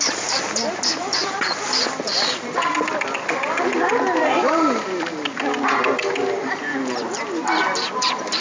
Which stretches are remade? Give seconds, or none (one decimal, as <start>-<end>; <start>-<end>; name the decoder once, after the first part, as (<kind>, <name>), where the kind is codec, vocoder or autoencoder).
none